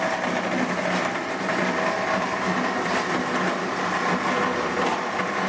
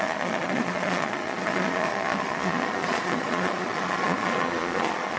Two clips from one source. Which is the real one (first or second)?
first